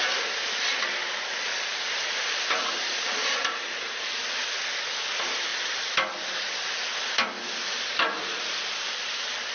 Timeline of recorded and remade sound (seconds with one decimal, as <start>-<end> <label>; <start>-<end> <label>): 0.0-1.7 recorded; 1.7-4.2 remade; 4.2-9.5 recorded